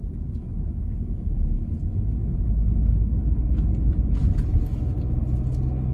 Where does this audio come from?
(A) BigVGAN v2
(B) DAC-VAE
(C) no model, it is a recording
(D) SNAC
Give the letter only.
C